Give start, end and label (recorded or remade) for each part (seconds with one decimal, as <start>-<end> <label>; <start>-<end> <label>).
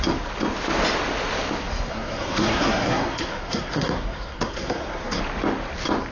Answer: 0.0-1.9 recorded; 1.9-5.2 remade; 5.2-6.1 recorded